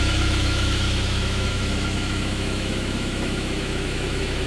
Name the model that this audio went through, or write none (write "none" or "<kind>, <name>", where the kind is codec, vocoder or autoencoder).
autoencoder, DAC-VAE